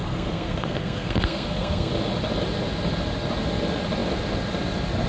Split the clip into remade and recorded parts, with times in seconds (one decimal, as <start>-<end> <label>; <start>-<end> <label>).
0.0-1.9 remade; 1.9-5.1 recorded